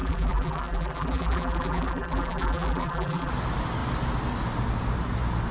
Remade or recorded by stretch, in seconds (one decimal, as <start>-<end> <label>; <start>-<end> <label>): 0.0-3.3 remade; 3.3-5.5 recorded